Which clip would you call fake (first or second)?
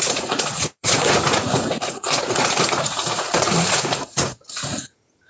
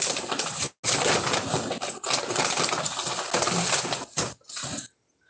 first